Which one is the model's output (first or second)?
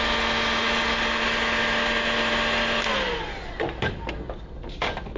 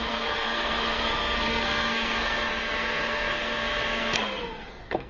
second